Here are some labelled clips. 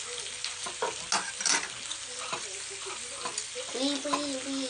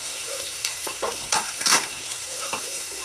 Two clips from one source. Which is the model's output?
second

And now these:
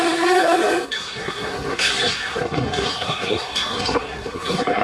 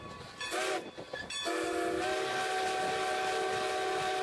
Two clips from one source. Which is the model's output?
first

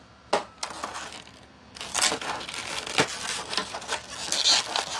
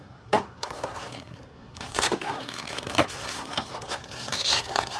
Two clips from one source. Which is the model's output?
second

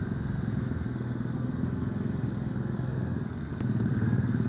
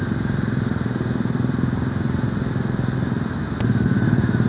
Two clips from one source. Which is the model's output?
first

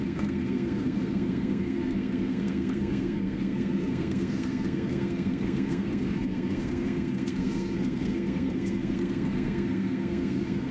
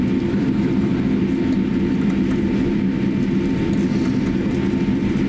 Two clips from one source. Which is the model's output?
first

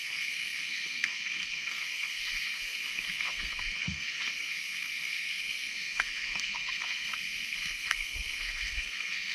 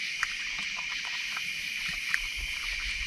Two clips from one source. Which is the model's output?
first